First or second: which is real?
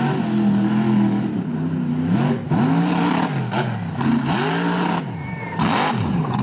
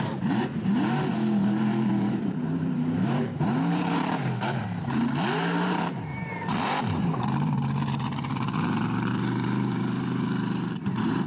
first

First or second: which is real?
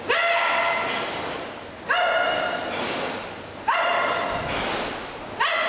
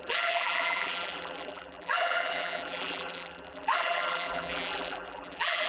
first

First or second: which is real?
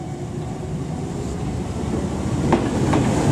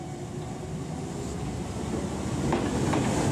second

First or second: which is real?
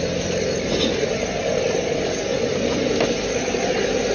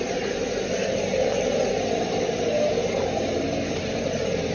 first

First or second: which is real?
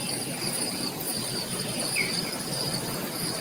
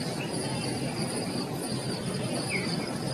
second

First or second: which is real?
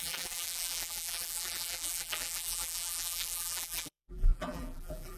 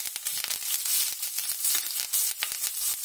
second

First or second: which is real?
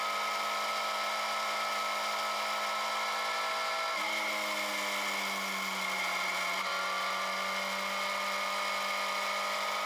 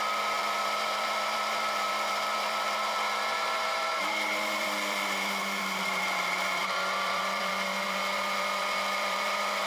first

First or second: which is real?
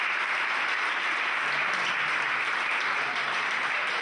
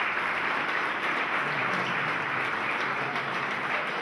first